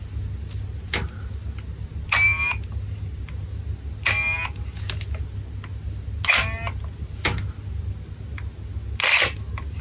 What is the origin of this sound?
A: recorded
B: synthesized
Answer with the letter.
A